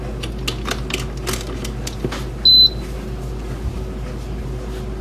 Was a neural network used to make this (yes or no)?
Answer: no